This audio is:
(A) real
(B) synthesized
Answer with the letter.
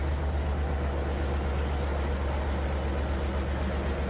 A